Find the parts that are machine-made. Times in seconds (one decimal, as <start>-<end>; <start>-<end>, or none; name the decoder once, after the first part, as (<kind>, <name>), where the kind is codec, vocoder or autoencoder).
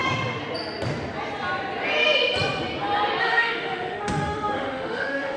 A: 3.2-5.4 (autoencoder, DAC-VAE)